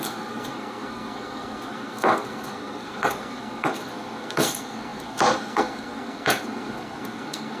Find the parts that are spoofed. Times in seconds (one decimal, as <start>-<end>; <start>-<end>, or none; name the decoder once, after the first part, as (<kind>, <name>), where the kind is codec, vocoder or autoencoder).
0.0-7.6 (codec, SNAC)